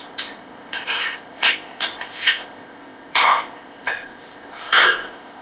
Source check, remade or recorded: remade